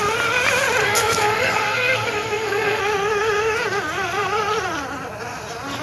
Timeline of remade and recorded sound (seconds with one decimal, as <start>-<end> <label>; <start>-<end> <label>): 0.0-0.8 recorded; 0.8-2.8 remade; 2.8-5.8 recorded